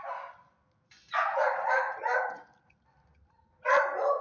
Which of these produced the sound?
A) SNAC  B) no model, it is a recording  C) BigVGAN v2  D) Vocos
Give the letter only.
B